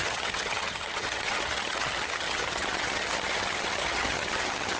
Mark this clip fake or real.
fake